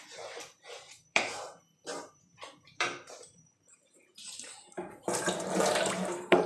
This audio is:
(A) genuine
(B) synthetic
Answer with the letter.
B